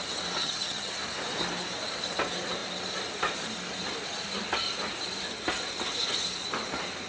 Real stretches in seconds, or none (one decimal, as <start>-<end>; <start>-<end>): 0.0-0.4; 0.9-7.1